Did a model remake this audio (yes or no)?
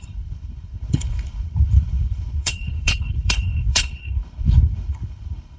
yes